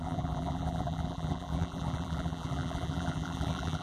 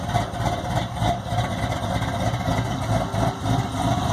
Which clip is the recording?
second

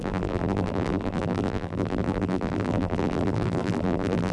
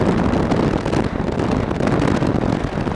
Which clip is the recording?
second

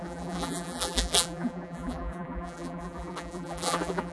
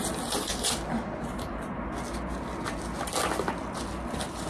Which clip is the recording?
second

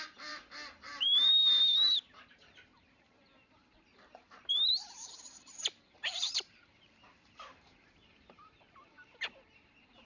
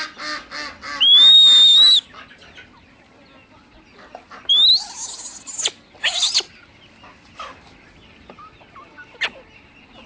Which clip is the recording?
second